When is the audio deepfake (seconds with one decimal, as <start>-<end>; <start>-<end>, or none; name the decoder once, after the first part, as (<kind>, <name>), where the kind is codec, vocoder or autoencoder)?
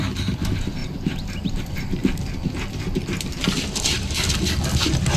0.8-1.6 (vocoder, BigVGAN v2); 2.0-4.4